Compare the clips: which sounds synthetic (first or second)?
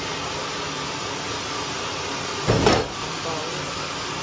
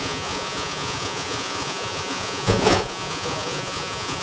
second